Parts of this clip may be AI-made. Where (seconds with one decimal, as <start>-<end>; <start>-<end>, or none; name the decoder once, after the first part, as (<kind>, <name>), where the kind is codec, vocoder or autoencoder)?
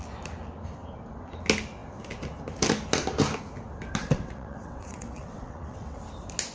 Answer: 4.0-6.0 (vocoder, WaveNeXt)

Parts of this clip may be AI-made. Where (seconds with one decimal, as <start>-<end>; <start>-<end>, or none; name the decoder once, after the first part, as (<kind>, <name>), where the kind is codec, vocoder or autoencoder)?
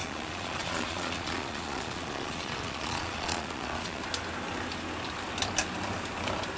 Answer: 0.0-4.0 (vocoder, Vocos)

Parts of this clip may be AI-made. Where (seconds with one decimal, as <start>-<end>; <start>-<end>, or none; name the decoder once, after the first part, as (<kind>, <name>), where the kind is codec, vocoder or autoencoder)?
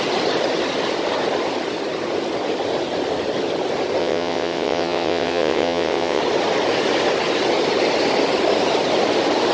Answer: 4.0-6.2 (vocoder, WaveNeXt)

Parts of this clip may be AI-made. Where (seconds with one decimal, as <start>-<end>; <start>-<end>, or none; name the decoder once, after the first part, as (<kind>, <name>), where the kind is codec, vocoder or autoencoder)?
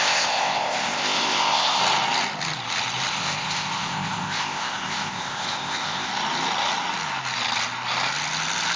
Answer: 0.0-1.8 (codec, ZipCodec); 3.1-6.1